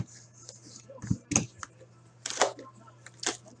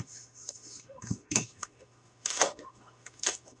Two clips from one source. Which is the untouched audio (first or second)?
first